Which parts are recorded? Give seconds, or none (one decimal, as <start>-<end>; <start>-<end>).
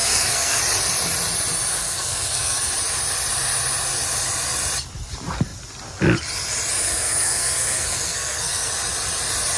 0.6-1.7; 2.7-6.8; 8.7-9.6